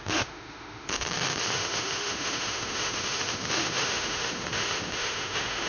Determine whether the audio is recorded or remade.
remade